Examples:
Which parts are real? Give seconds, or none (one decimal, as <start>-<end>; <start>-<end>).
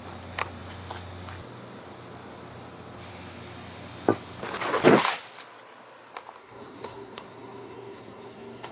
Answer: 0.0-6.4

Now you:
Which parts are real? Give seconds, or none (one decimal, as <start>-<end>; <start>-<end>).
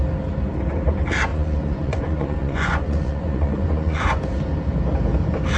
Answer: 0.0-1.3; 4.2-5.6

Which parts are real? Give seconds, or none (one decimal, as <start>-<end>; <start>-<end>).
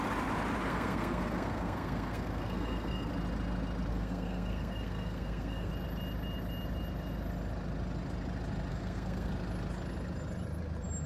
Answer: 0.0-0.7; 3.1-3.9; 5.7-8.7; 9.3-11.1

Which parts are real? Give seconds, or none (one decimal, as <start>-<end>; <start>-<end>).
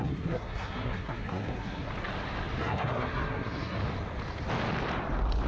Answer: 1.9-2.6; 3.8-5.5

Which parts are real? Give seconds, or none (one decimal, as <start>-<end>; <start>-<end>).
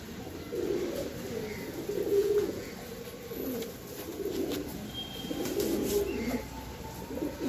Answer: 0.0-2.1; 2.7-7.5